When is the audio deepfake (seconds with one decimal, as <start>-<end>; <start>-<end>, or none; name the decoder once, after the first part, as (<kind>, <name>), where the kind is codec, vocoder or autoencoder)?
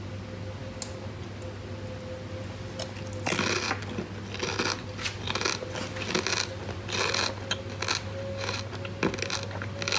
none